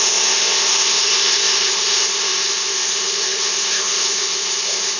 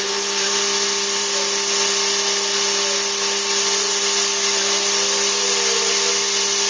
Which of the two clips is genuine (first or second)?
second